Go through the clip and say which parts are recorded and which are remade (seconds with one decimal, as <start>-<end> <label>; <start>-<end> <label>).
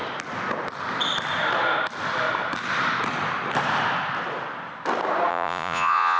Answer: 0.0-5.3 recorded; 5.3-6.2 remade